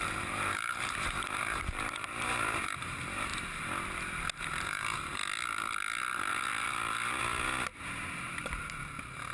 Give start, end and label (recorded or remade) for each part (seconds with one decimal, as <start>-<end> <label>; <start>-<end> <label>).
0.0-3.3 remade; 3.3-4.4 recorded; 4.4-5.2 remade; 5.2-7.2 recorded; 7.2-9.3 remade